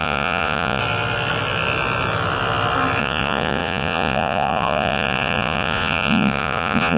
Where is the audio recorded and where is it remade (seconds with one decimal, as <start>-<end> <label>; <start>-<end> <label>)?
0.0-0.8 remade; 0.8-3.0 recorded; 3.0-7.0 remade